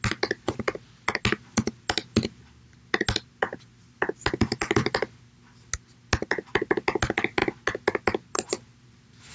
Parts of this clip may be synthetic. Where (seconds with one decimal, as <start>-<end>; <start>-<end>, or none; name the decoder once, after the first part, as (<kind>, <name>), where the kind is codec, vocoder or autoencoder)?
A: none